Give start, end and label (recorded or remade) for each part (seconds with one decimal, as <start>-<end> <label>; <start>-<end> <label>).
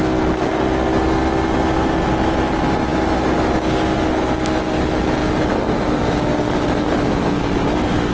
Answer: 0.0-8.1 recorded